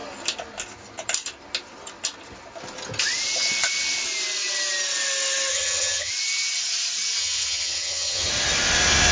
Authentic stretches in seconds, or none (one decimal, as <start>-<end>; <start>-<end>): 0.0-5.5; 6.1-7.2; 8.3-9.1